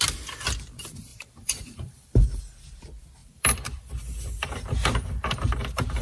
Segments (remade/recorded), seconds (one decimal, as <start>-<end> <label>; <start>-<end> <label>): 0.0-1.1 recorded; 1.1-2.4 remade; 2.4-3.2 recorded; 3.2-3.9 remade; 3.9-4.4 recorded; 4.4-6.0 remade